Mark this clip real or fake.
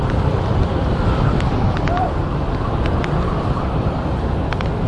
fake